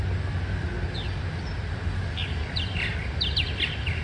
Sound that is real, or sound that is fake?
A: real